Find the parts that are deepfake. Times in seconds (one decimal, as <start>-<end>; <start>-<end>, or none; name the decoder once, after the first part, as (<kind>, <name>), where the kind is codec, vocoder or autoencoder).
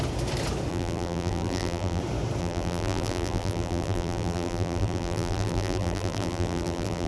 0.7-2.0 (vocoder, BigVGAN v2); 2.4-7.1